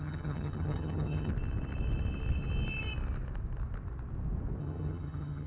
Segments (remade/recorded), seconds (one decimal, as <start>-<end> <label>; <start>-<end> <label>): 0.0-1.3 remade; 1.3-4.6 recorded; 4.6-5.5 remade